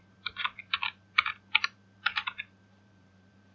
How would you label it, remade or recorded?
remade